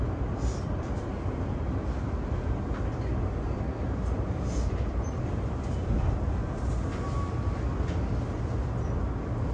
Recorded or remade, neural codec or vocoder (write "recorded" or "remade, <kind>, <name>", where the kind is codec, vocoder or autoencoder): recorded